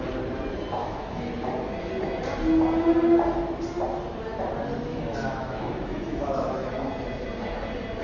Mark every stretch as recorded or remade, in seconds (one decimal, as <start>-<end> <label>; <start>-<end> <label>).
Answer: 0.0-0.8 recorded; 0.8-1.9 remade; 1.9-4.9 recorded; 4.9-6.9 remade; 6.9-8.0 recorded